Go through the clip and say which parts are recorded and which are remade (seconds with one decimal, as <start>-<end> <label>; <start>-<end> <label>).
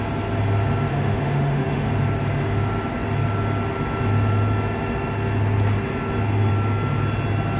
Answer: 0.0-0.9 recorded; 0.9-1.9 remade; 1.9-7.6 recorded